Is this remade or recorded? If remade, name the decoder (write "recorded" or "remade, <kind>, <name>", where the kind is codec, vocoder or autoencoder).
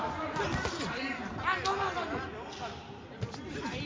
recorded